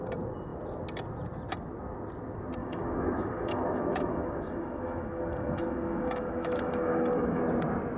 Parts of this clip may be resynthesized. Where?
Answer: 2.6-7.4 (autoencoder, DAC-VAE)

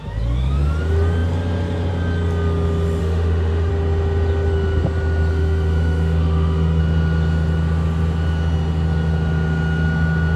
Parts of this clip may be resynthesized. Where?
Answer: 3.0-3.7 (autoencoder, DAC-VAE); 5.3-6.8

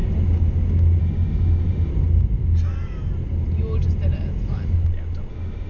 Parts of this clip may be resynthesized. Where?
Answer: 1.0-1.9 (autoencoder, DAC-VAE); 5.3-5.7

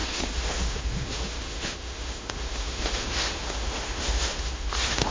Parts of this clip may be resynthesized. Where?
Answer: 0.0-5.1 (autoencoder, DAC-VAE)

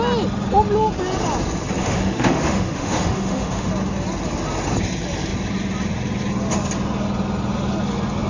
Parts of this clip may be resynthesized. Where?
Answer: 1.8-3.7 (autoencoder, DAC-VAE)